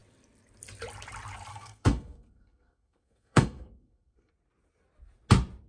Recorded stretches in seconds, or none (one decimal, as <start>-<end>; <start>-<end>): 0.0-1.5; 4.3-5.7